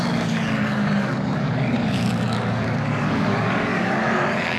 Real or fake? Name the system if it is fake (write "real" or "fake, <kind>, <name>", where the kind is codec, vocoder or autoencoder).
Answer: fake, codec, DAC